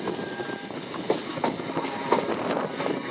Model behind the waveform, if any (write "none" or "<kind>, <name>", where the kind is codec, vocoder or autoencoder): none